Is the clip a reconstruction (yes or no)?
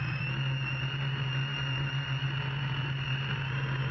no